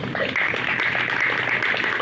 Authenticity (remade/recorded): recorded